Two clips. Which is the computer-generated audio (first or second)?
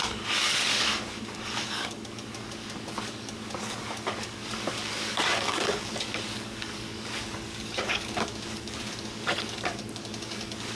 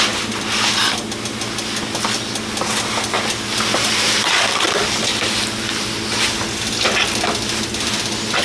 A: first